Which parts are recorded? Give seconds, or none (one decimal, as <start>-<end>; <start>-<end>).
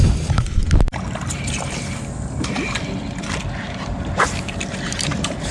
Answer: 0.6-3.9